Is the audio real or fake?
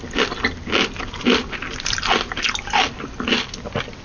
fake